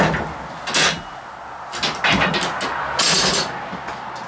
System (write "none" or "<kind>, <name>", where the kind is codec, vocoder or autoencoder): none